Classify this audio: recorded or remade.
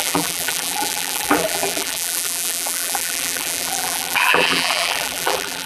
remade